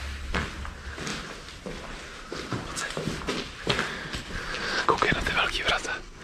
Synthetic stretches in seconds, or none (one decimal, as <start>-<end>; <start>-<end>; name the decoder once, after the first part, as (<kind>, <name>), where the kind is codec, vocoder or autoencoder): none